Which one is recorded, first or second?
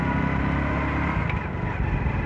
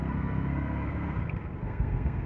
first